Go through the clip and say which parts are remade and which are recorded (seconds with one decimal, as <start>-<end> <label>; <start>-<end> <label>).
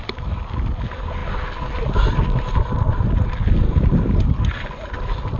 0.0-5.4 recorded